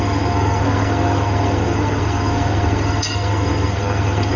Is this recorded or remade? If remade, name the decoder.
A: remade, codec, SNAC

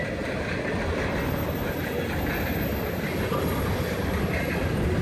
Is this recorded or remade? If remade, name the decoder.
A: recorded